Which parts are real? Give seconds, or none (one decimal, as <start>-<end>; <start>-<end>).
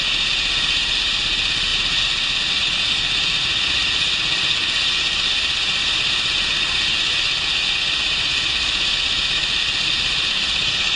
0.0-11.0